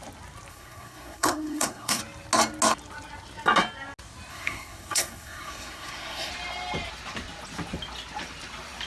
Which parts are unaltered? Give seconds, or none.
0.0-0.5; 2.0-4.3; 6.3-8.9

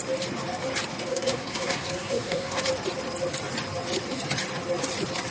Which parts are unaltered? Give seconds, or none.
0.0-1.1; 2.6-5.3

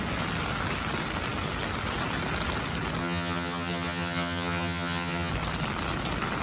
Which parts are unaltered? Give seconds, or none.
0.0-3.0; 5.3-6.4

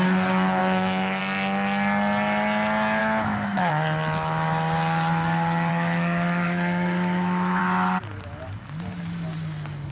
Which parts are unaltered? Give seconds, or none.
0.0-0.6; 1.2-3.0; 3.7-5.7; 7.6-9.9

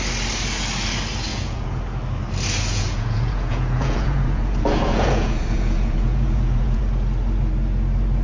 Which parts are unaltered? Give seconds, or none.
0.0-1.3; 1.8-2.7; 6.8-8.2

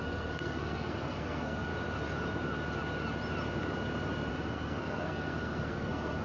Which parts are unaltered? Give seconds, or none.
1.7-4.3